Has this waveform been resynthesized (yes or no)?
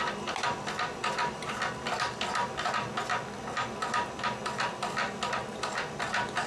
no